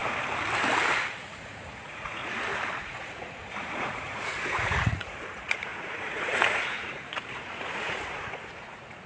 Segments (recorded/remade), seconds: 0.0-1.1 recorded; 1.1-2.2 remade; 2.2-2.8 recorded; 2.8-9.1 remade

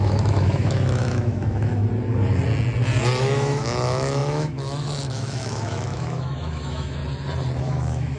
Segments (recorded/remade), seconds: 0.0-1.8 remade; 1.8-3.2 recorded; 3.2-7.0 remade; 7.0-7.6 recorded; 7.6-8.2 remade

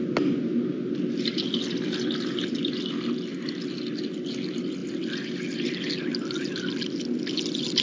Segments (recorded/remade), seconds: 0.0-7.8 recorded